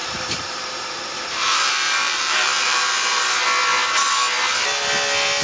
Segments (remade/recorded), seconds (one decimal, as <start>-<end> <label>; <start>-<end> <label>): 0.0-3.2 remade; 3.2-5.4 recorded